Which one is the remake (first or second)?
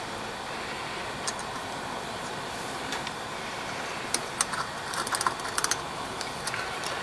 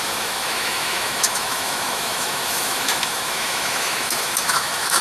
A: second